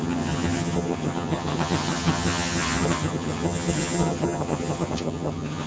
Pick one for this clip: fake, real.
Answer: fake